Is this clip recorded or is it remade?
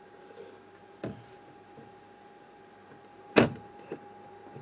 recorded